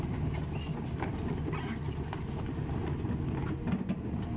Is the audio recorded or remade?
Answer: recorded